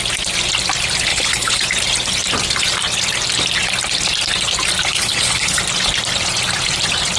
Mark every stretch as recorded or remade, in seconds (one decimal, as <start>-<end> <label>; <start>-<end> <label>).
0.0-1.1 recorded; 1.1-1.6 remade; 1.6-4.9 recorded; 4.9-5.6 remade; 5.6-7.2 recorded